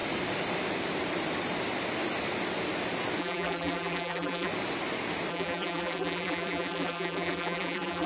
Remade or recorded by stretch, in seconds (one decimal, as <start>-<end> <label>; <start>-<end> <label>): 0.0-3.2 recorded; 3.2-4.5 remade; 4.5-5.3 recorded; 5.3-8.1 remade